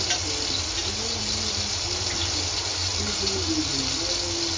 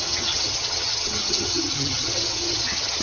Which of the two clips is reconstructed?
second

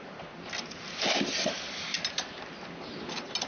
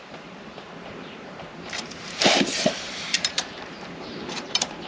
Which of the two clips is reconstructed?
second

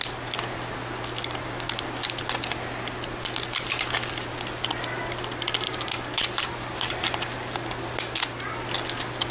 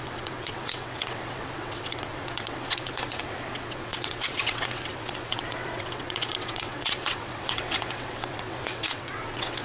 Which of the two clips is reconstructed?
second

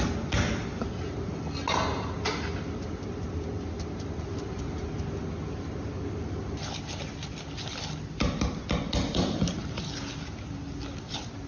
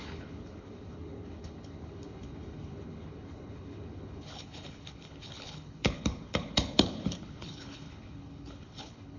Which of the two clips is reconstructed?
second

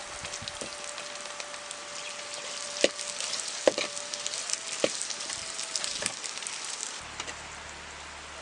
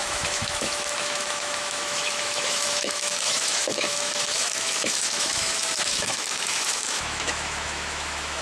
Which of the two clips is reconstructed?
second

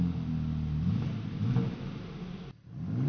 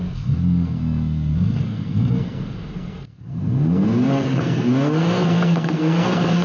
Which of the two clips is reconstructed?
second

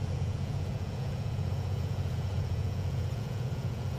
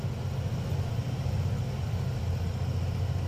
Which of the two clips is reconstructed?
first